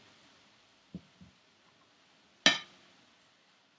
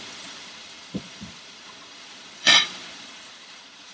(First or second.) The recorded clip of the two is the first